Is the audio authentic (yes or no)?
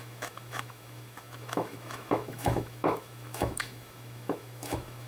no